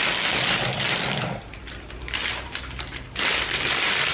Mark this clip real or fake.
fake